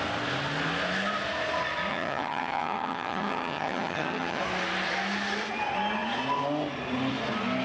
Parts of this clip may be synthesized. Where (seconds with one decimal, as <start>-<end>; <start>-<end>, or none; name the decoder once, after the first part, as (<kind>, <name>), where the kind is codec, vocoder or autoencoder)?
1.9-4.4 (vocoder, HiFi-GAN)